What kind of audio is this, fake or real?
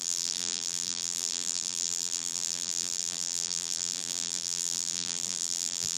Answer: fake